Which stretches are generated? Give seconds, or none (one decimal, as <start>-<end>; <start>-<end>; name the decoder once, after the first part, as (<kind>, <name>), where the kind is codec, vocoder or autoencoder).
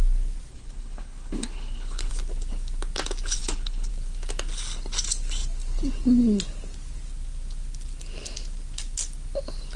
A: 0.5-2.1 (codec, HILCodec); 3.4-3.9